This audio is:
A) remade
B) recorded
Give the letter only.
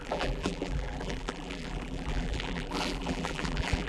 A